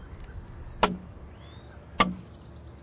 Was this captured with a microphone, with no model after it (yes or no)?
yes